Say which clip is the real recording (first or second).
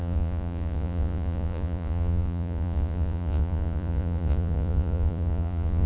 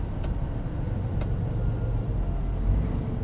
second